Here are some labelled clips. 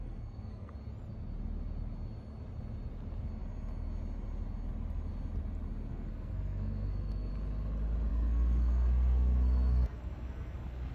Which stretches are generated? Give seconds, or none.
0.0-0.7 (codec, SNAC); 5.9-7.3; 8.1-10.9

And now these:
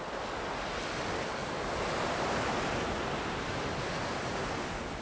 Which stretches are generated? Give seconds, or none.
none

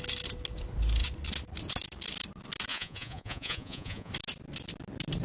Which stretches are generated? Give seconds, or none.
2.7-4.1 (vocoder, Vocos)

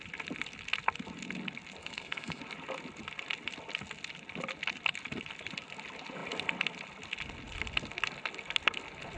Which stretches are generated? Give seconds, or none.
1.8-2.4 (codec, SNAC)

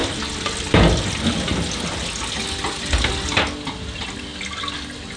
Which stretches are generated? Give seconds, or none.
none

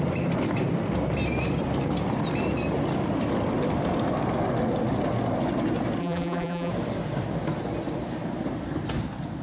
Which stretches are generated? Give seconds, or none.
6.0-6.7 (vocoder, BigVGAN v2)

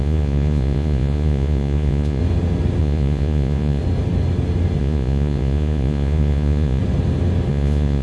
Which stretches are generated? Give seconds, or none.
0.0-2.2 (vocoder, Vocos); 2.8-3.8; 4.8-6.8; 7.5-8.0